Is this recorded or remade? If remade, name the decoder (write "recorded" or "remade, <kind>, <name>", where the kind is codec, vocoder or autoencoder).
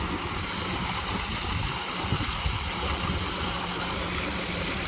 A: recorded